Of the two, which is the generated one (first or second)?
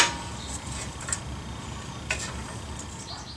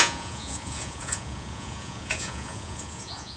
second